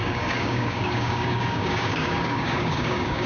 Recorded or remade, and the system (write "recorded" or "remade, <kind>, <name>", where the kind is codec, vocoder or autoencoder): remade, codec, DAC